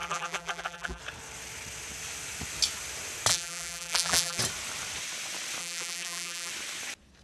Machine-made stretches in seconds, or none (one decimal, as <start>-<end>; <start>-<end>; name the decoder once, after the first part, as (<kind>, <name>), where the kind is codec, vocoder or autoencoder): 0.0-1.0 (vocoder, BigVGAN v2); 3.3-4.4; 5.6-6.5